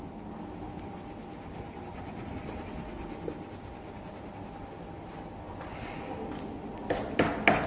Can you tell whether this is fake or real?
real